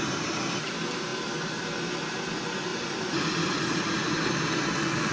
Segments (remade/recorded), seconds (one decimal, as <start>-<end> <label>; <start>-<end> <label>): 0.0-2.7 recorded; 2.7-3.6 remade; 3.6-5.1 recorded